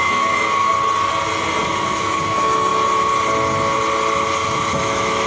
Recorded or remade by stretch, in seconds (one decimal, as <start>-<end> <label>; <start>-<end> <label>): 0.0-0.7 remade; 0.7-1.6 recorded; 1.6-2.7 remade; 2.7-4.8 recorded; 4.8-5.3 remade